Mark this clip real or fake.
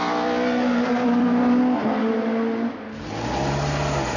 real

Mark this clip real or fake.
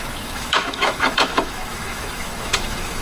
fake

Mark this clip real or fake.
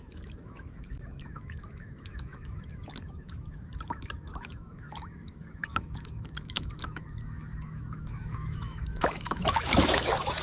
fake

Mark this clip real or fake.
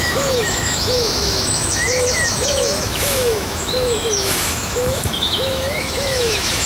fake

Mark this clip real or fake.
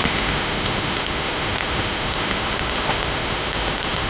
fake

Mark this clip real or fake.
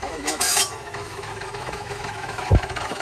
fake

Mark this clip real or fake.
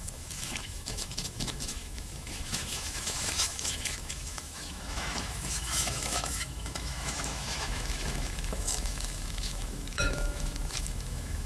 fake